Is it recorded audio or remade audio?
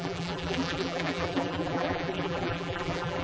remade